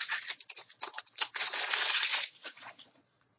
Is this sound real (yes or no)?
no